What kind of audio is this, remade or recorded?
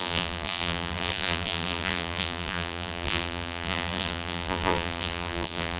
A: remade